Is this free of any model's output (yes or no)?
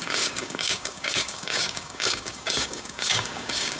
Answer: no